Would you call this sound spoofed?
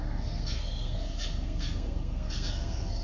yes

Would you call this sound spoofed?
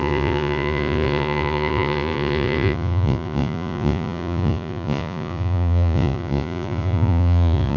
yes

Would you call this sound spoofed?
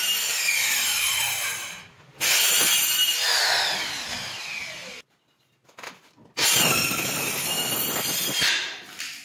no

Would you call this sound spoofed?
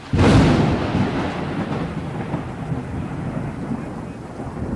no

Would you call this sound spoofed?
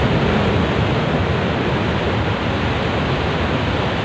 no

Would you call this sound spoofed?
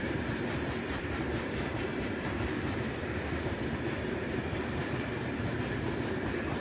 yes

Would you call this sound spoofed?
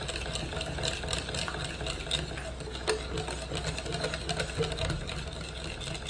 no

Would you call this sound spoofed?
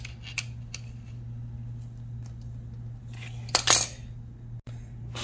no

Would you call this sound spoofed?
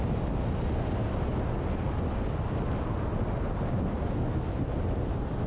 no